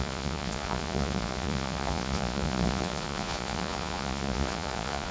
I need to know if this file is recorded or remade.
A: remade